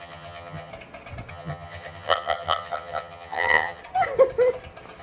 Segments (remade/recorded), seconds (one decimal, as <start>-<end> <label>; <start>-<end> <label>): 0.0-0.7 remade; 0.7-1.3 recorded; 1.3-3.8 remade; 3.8-5.0 recorded